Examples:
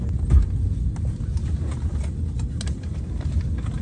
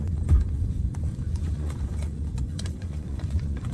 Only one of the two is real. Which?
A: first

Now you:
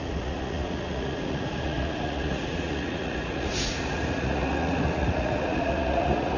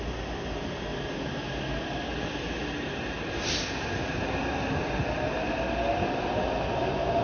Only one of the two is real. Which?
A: second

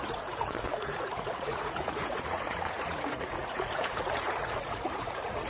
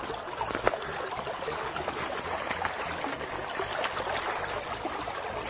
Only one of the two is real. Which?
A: second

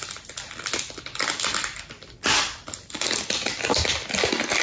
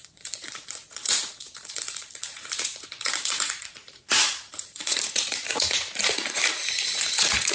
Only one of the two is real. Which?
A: first